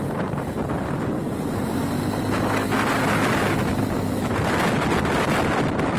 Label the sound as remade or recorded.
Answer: recorded